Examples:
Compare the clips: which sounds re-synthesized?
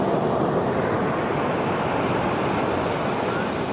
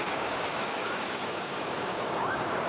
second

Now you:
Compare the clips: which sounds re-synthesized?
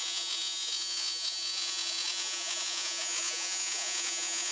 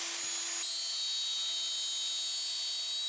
first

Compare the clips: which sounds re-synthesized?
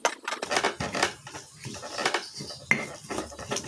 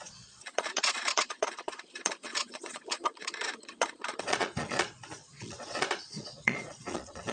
second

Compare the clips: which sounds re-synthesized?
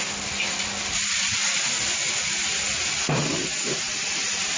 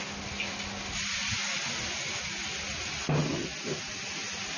first